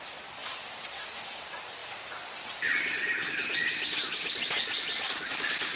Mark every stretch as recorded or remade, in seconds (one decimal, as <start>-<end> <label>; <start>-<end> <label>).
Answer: 0.0-5.8 recorded

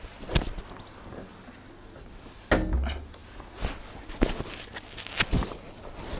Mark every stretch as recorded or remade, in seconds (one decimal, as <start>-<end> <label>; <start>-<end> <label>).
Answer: 0.0-6.2 recorded

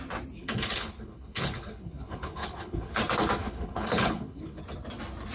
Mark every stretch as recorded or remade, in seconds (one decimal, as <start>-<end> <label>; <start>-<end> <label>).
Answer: 0.0-0.4 recorded; 0.4-3.0 remade; 3.0-3.4 recorded; 3.4-4.6 remade; 4.6-5.3 recorded

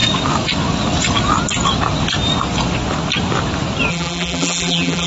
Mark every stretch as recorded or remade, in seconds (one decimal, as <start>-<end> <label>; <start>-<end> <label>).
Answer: 0.0-3.9 recorded; 3.9-5.1 remade

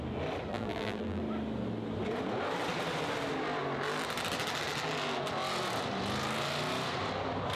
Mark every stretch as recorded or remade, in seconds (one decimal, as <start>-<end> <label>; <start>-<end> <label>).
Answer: 0.0-0.5 recorded; 0.5-1.2 remade; 1.2-7.6 recorded

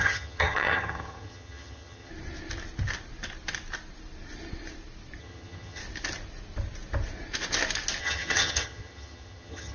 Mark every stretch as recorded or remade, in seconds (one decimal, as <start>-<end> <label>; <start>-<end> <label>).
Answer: 0.0-2.1 remade; 2.1-5.2 recorded; 5.2-5.8 remade; 5.8-8.0 recorded; 8.0-9.7 remade

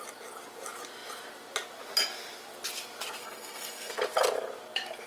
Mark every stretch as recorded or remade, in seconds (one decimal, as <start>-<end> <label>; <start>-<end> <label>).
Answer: 0.0-3.2 recorded; 3.2-3.9 remade; 3.9-5.1 recorded

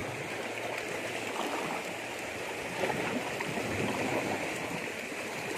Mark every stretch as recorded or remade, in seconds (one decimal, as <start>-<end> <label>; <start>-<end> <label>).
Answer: 0.0-5.6 recorded